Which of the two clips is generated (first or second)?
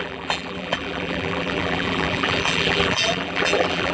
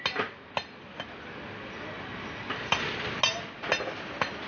first